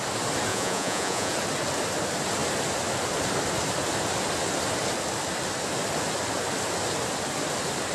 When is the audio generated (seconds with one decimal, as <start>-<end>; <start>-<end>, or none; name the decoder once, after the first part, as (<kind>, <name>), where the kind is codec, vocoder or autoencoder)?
0.5-1.3 (vocoder, Vocos)

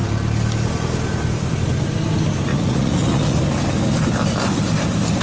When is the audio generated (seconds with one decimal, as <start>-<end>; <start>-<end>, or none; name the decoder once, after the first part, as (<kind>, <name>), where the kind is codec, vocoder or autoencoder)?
2.5-3.4 (vocoder, Vocos)

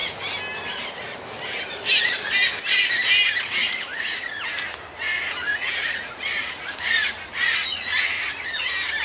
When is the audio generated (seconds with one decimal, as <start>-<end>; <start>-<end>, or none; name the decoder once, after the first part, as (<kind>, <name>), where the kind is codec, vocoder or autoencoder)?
3.6-4.3 (vocoder, Vocos); 5.5-8.5

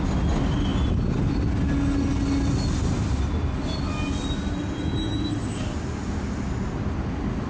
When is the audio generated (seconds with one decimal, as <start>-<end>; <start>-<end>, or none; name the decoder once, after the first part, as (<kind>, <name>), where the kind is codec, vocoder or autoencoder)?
none

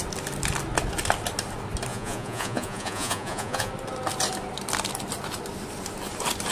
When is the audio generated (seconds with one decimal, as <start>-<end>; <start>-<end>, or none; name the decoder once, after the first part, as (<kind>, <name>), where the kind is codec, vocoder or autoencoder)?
1.9-3.7 (vocoder, Vocos)

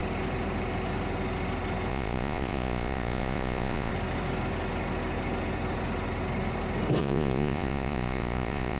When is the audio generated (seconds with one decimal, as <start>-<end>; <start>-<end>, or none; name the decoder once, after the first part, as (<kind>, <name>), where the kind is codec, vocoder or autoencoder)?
1.9-3.9 (vocoder, Vocos); 7.0-8.8